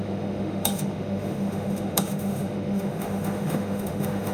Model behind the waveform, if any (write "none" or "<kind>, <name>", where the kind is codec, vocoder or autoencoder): autoencoder, DAC-VAE